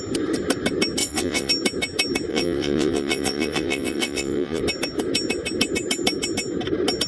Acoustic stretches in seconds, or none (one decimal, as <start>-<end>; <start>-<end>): 0.0-1.0; 1.5-2.3; 4.6-7.1

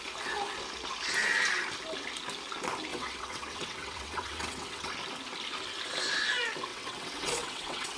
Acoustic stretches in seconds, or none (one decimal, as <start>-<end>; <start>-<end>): 0.0-2.9; 4.9-6.7

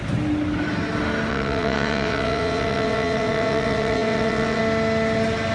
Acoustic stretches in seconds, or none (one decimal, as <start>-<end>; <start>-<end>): 0.0-1.3; 4.6-5.5

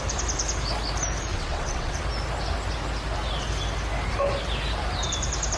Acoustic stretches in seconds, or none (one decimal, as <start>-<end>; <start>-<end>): 0.0-1.3; 2.0-5.6

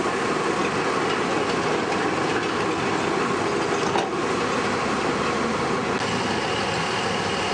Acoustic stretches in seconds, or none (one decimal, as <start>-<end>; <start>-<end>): 0.0-7.5

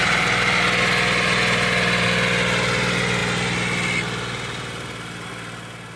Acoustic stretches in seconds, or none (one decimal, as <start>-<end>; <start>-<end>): 0.0-6.0

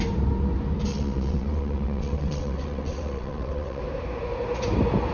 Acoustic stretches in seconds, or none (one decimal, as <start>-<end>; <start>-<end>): 0.0-0.9; 3.8-5.1